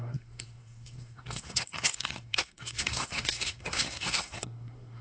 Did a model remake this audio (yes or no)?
yes